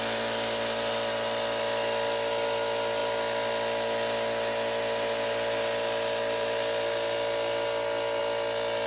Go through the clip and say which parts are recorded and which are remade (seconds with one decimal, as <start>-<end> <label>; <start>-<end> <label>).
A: 0.0-8.9 recorded